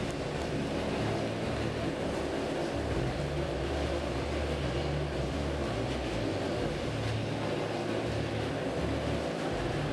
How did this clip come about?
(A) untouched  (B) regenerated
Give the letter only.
A